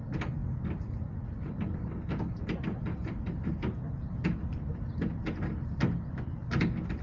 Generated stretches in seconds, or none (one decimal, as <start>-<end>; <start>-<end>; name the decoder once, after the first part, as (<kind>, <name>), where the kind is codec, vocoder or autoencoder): none